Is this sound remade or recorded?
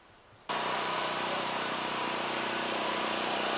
remade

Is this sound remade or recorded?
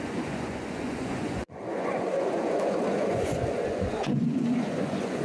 remade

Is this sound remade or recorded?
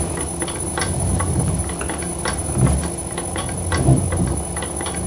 recorded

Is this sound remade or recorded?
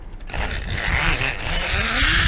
recorded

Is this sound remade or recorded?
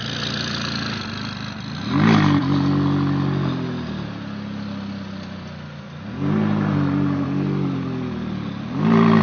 recorded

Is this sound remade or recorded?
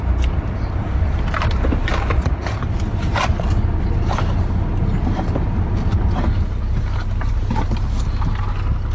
recorded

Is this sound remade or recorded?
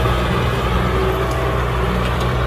recorded